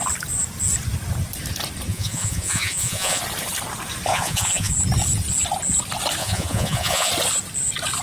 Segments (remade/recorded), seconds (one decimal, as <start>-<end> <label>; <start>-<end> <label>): 0.0-1.9 recorded; 1.9-3.2 remade; 3.2-4.1 recorded; 4.1-4.7 remade; 4.7-6.2 recorded; 6.2-7.1 remade; 7.1-8.0 recorded